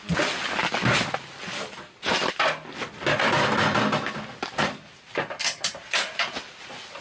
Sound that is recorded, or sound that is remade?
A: recorded